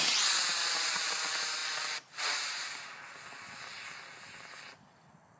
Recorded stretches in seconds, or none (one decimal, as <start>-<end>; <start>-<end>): 0.0-5.4